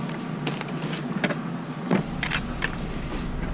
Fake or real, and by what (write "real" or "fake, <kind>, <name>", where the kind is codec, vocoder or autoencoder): real